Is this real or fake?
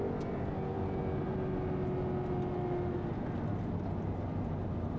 real